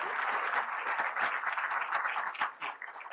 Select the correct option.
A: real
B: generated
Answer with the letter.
A